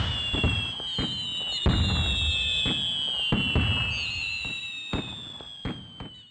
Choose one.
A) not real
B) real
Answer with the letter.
B